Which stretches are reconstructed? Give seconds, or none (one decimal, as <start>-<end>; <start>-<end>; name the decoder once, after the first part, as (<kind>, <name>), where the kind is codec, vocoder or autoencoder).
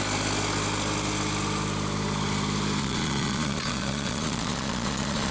2.8-5.3 (vocoder, Vocos)